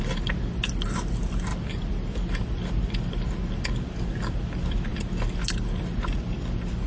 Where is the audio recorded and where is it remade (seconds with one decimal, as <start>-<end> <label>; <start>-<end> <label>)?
0.0-6.9 recorded